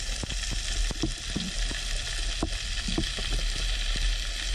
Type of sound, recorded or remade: recorded